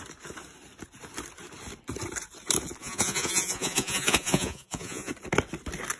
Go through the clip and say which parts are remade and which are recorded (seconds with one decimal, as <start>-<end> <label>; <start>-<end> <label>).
0.0-2.8 recorded; 2.8-5.1 remade; 5.1-6.0 recorded